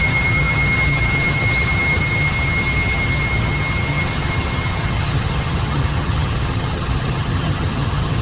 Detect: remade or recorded remade